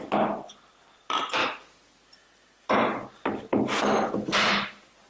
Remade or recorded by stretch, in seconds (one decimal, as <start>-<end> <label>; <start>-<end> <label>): 0.0-5.1 recorded